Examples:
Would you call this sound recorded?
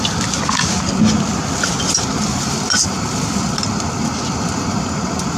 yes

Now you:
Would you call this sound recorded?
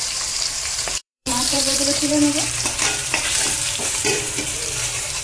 no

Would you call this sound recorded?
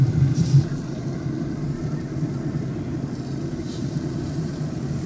no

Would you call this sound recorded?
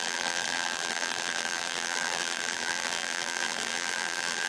no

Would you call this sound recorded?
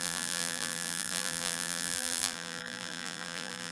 no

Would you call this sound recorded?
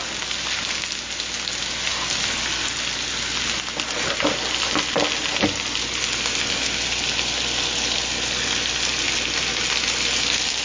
yes